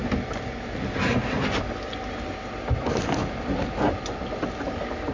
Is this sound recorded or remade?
recorded